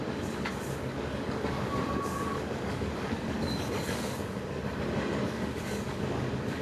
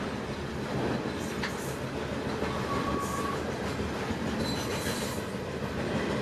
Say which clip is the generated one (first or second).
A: first